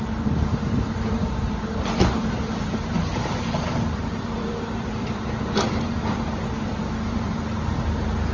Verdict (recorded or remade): remade